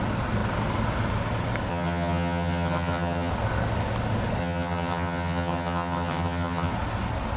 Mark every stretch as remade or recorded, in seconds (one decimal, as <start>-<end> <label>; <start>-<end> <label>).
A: 0.0-1.7 recorded; 1.7-3.3 remade; 3.3-4.4 recorded; 4.4-6.7 remade; 6.7-7.4 recorded